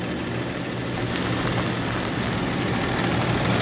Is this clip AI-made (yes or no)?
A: no